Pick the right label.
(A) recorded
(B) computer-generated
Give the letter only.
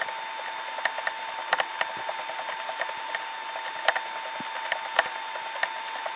A